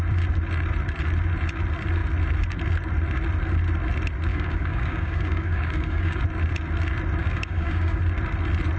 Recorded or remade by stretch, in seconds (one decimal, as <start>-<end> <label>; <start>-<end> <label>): 0.0-4.3 recorded; 4.3-6.2 remade; 6.2-7.2 recorded; 7.2-8.0 remade; 8.0-8.8 recorded